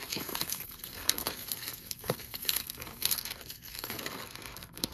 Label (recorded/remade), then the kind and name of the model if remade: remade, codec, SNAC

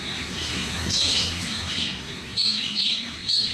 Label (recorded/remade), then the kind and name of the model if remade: remade, codec, SNAC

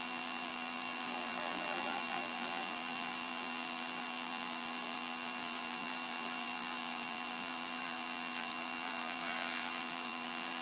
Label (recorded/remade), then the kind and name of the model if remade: remade, vocoder, BigVGAN v2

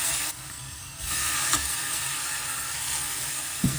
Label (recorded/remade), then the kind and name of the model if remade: remade, codec, SNAC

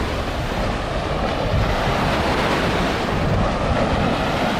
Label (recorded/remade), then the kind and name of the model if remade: recorded